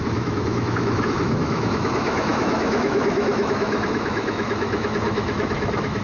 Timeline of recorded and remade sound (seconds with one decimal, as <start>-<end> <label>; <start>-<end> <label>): 0.0-6.0 remade